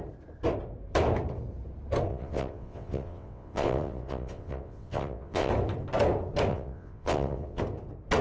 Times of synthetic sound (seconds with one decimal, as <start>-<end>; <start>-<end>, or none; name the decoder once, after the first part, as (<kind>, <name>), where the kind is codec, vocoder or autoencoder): 2.1-5.5 (vocoder, WaveNeXt); 6.5-7.6